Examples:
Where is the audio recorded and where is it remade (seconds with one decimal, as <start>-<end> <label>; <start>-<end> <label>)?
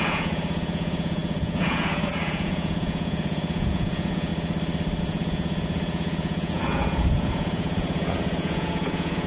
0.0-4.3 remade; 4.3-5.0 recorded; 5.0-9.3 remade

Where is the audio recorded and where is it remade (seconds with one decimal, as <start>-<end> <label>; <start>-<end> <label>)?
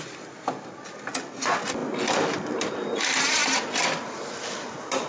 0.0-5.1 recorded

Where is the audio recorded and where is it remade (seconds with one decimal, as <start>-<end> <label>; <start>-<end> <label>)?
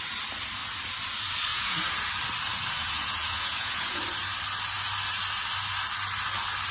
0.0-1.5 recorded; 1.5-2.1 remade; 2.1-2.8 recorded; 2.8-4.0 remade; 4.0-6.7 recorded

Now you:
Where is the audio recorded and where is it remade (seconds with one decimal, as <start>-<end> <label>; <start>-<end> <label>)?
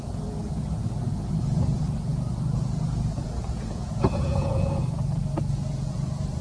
0.0-6.4 remade